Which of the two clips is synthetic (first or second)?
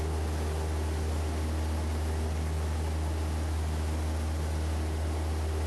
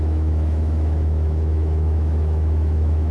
second